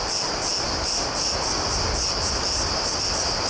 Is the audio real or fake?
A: real